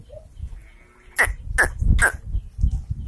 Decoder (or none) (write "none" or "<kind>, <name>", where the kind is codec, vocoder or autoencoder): none